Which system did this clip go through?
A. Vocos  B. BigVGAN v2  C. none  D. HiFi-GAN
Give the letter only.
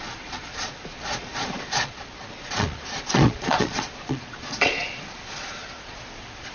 A